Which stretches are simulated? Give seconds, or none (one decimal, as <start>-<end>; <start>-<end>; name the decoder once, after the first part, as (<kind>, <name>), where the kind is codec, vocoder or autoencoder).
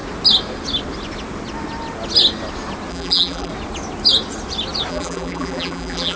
2.9-3.5 (vocoder, BigVGAN v2); 4.9-6.2